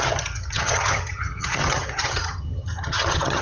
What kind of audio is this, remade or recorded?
remade